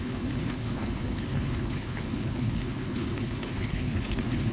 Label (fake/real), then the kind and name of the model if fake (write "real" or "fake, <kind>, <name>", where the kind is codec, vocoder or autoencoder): fake, codec, HILCodec